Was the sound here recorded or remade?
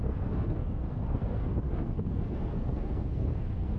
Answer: remade